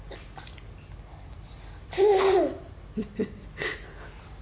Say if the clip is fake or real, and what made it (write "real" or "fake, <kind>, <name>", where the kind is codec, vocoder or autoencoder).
real